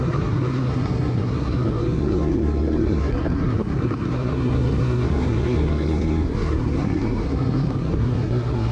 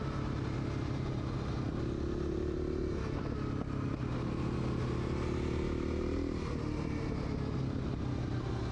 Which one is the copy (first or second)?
first